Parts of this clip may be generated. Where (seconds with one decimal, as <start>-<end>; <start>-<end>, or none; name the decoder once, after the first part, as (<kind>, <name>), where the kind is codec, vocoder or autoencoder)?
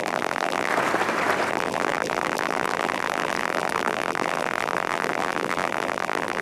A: 0.0-0.7 (vocoder, BigVGAN v2); 1.5-6.4